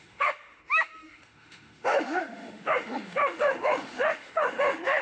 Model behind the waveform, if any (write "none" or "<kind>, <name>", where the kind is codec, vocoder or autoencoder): autoencoder, DAC-VAE